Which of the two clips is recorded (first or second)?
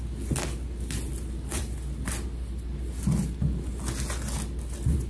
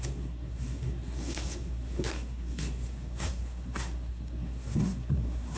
first